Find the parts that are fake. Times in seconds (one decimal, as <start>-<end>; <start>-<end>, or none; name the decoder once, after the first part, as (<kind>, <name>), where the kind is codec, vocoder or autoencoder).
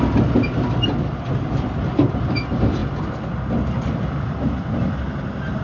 none